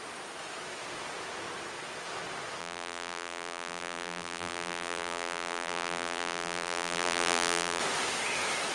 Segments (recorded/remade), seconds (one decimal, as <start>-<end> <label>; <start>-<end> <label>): 0.0-2.6 recorded; 2.6-7.8 remade; 7.8-8.7 recorded